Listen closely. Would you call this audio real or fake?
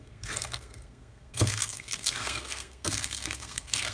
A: fake